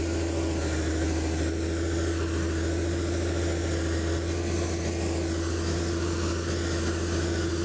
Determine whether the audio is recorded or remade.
recorded